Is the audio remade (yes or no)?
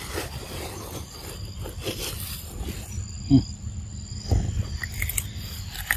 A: no